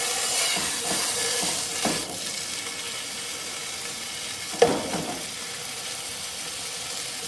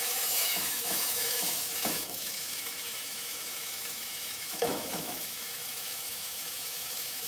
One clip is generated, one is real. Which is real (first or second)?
first